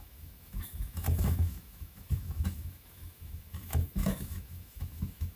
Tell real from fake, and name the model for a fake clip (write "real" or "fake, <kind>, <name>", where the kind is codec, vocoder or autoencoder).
fake, autoencoder, DAC-VAE